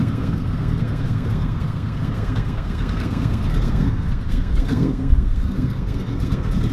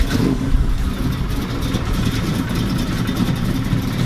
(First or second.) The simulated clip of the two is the first